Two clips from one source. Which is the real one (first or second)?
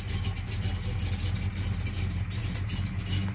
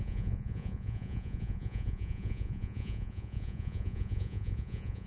first